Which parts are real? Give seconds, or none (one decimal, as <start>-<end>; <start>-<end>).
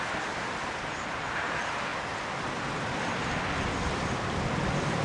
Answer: 1.9-2.9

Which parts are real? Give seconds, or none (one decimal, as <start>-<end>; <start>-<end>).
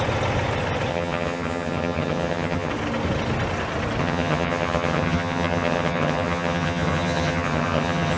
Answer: 0.0-0.9; 2.7-4.0